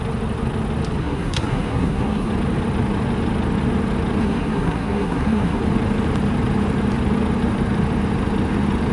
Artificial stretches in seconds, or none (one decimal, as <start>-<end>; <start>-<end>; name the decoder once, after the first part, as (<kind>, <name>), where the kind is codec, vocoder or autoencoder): 1.0-2.3 (codec, SNAC); 4.2-5.6